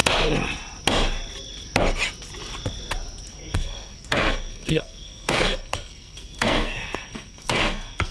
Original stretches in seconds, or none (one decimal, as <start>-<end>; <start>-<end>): 0.0-3.3